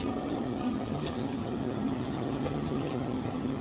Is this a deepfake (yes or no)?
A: yes